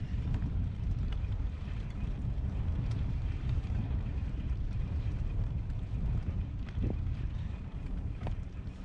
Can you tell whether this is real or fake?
fake